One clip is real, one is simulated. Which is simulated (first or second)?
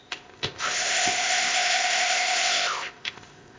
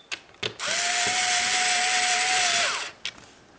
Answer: first